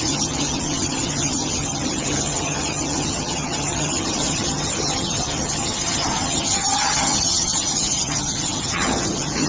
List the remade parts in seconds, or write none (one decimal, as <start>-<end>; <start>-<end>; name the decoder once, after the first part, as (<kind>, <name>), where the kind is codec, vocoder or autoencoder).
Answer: 0.0-9.5 (vocoder, HiFi-GAN)